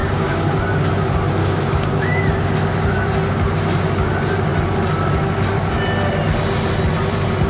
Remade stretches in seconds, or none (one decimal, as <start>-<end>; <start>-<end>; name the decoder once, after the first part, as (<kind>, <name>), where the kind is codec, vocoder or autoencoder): 0.0-0.6 (codec, DAC); 1.4-2.2